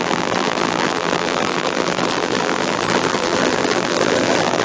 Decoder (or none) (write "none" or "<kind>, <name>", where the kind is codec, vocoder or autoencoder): vocoder, BigVGAN v2